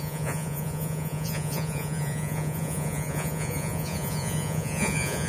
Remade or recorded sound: remade